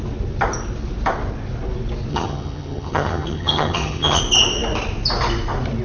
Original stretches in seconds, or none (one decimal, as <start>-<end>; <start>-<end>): 0.0-2.1; 4.2-5.8